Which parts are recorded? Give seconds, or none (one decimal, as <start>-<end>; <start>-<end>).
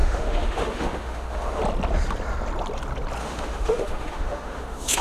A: 1.6-3.2